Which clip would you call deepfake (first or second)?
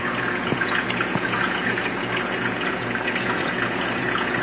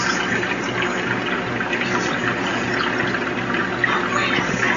first